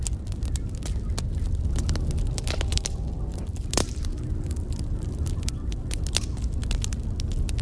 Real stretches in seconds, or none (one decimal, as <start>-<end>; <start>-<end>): 0.0-2.7; 5.8-7.6